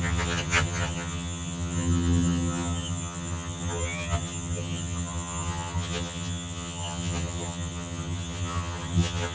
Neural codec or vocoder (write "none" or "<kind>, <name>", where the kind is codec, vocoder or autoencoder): vocoder, HiFi-GAN